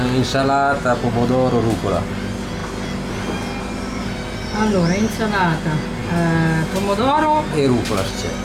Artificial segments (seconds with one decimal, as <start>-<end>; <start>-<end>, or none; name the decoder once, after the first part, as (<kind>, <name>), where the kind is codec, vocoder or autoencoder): none